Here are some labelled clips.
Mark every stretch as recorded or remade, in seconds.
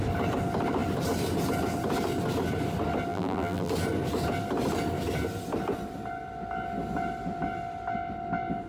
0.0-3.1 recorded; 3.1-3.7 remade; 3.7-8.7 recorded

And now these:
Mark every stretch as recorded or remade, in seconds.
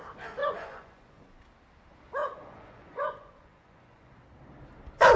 0.0-0.4 recorded; 0.4-1.3 remade; 1.3-2.2 recorded; 2.2-4.1 remade; 4.1-5.2 recorded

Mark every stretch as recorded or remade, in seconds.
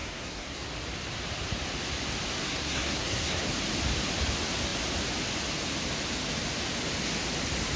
0.0-0.7 remade; 0.7-2.4 recorded; 2.4-3.5 remade; 3.5-7.8 recorded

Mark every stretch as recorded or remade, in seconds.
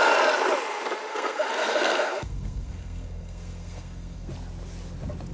0.0-1.1 recorded; 1.1-4.3 remade; 4.3-5.3 recorded